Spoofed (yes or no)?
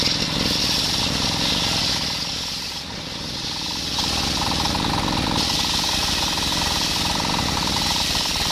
no